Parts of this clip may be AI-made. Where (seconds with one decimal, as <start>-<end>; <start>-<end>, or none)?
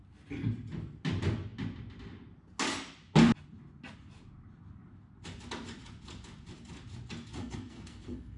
7.4-8.4